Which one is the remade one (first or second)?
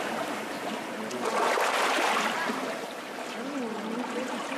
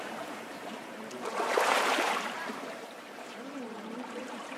second